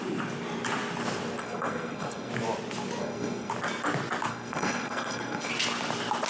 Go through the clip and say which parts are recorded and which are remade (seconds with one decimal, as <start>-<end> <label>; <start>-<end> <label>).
0.0-1.4 recorded; 1.4-2.3 remade; 2.3-3.0 recorded; 3.0-3.5 remade; 3.5-4.3 recorded; 4.3-5.5 remade; 5.5-6.3 recorded